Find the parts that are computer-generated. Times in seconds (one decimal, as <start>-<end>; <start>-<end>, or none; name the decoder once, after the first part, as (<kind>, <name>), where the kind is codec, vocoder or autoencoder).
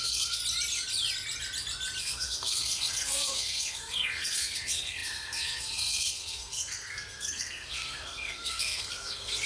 0.0-0.4 (codec, SNAC); 2.0-9.5